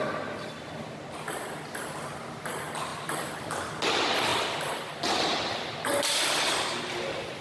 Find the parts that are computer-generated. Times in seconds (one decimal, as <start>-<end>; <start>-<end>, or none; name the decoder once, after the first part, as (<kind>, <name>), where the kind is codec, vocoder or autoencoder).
2.9-3.5 (vocoder, BigVGAN v2)